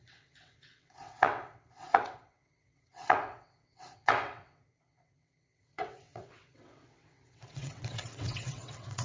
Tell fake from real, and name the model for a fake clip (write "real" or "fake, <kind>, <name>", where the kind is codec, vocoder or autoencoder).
fake, vocoder, WaveNeXt